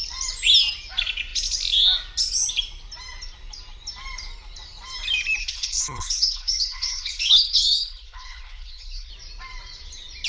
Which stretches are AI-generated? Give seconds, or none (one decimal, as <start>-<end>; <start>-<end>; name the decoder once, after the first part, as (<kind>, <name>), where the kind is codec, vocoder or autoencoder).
5.4-9.1 (codec, HILCodec)